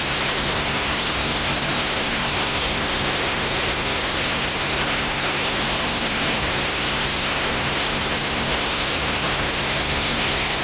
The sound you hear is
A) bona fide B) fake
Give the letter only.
B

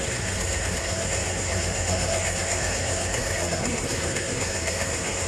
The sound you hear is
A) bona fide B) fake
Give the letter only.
B